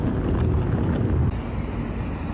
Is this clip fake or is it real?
real